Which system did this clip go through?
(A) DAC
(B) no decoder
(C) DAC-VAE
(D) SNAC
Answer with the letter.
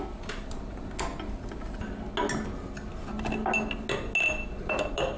B